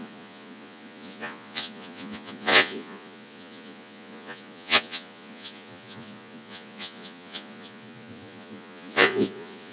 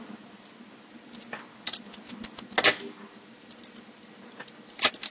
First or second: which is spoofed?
first